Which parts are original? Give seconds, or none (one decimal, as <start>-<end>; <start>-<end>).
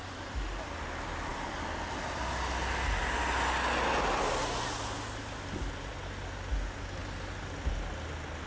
0.0-8.5